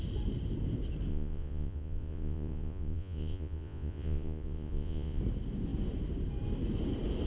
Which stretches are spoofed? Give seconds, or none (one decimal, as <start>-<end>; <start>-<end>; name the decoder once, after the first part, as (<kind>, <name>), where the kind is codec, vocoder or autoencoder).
1.1-5.2 (vocoder, Vocos)